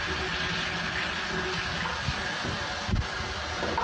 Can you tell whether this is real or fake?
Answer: real